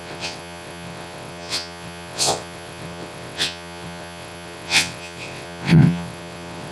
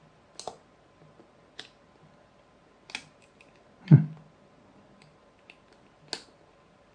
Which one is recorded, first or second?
second